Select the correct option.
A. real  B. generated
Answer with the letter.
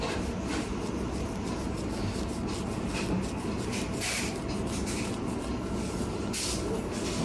A